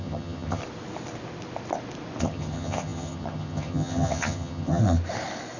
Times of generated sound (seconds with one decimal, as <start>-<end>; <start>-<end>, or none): 0.0-0.6; 2.2-4.8